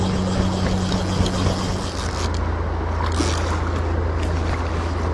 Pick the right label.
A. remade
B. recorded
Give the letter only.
B